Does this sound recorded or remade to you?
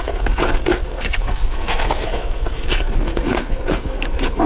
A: remade